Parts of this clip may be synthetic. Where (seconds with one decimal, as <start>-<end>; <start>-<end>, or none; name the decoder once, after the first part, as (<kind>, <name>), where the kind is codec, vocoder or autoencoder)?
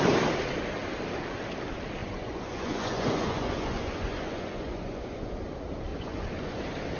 2.0-5.3 (vocoder, Vocos); 5.9-6.6